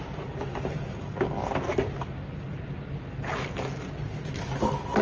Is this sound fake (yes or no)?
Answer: no